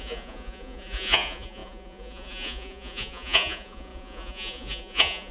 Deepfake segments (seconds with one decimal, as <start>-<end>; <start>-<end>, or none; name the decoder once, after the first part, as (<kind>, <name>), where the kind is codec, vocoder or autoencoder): 0.0-5.3 (vocoder, Vocos)